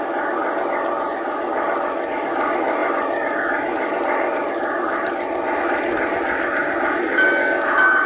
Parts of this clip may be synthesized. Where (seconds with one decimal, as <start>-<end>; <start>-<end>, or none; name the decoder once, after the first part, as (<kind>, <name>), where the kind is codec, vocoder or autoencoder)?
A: none

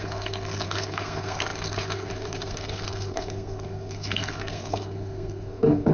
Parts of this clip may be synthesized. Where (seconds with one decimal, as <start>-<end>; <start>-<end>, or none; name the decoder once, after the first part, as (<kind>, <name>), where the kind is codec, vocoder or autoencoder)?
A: 0.0-5.9 (codec, SNAC)

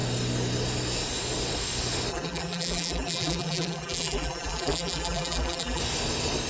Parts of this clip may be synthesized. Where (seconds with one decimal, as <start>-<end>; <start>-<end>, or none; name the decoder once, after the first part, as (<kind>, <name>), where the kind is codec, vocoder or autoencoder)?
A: 2.1-5.8 (vocoder, BigVGAN v2)